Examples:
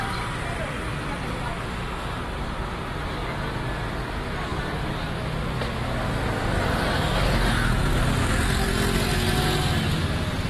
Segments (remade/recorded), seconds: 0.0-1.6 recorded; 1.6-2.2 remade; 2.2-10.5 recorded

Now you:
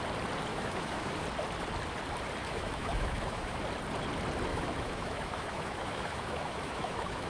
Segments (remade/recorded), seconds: 0.0-0.5 recorded; 0.5-1.1 remade; 1.1-2.4 recorded; 2.4-3.6 remade; 3.6-4.5 recorded; 4.5-7.3 remade

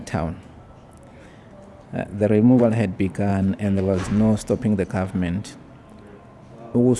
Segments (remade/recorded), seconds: 0.0-2.1 recorded; 2.1-2.6 remade; 2.6-3.3 recorded; 3.3-4.4 remade; 4.4-7.0 recorded